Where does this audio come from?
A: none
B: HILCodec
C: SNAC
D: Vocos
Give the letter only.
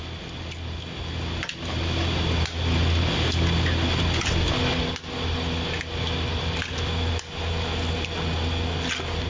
A